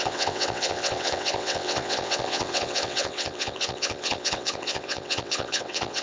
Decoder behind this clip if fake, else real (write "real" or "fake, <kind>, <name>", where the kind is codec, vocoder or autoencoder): fake, vocoder, WaveNeXt